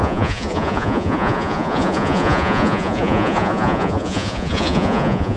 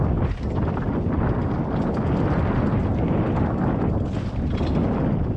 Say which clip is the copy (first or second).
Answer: first